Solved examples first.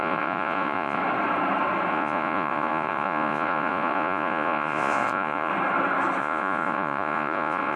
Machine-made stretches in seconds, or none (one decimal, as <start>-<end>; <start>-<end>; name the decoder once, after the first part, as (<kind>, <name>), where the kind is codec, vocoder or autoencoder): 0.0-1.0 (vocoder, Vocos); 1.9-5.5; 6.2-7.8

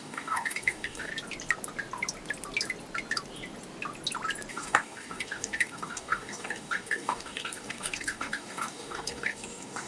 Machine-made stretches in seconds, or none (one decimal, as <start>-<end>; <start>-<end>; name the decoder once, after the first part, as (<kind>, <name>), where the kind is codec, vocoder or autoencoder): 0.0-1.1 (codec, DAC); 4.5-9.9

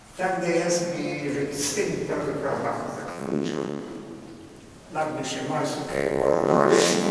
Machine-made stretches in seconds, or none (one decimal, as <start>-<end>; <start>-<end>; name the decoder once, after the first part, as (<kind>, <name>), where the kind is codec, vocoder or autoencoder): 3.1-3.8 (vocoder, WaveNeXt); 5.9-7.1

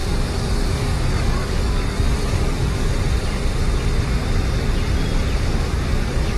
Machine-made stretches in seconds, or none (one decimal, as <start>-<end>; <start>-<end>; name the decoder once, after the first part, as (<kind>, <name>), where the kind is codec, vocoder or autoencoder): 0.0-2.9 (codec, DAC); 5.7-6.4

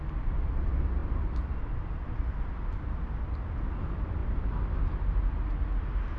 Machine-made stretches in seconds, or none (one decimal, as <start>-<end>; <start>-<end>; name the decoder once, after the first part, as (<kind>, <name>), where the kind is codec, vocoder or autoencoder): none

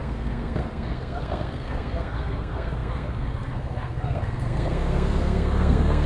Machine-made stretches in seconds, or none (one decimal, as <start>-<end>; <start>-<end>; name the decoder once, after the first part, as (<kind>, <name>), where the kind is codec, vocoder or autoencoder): 0.0-6.1 (codec, SNAC)